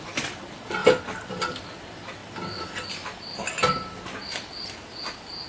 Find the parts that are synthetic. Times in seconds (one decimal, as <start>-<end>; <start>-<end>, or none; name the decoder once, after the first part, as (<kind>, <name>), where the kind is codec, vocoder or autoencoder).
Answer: 0.8-1.3 (vocoder, BigVGAN v2)